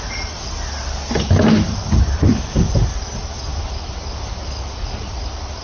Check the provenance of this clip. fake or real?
real